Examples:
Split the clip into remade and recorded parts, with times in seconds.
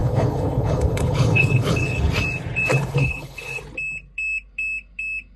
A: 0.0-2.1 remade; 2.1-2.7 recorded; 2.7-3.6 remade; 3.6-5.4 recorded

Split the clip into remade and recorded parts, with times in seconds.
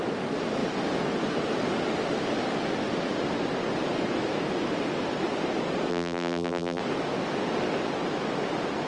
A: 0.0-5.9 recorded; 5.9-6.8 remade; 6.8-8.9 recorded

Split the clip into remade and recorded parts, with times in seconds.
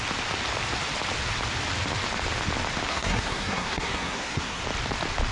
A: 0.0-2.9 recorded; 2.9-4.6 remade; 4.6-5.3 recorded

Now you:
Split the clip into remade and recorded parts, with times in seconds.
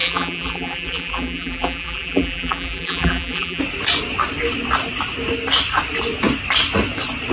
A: 0.0-3.6 remade; 3.6-7.3 recorded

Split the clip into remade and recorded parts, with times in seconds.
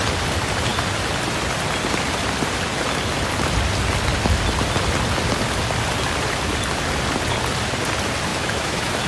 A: 0.0-8.3 recorded; 8.3-9.1 remade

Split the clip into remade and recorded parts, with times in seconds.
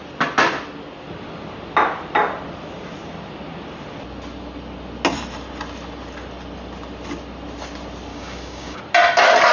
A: 0.0-8.1 recorded; 8.1-8.8 remade; 8.8-9.5 recorded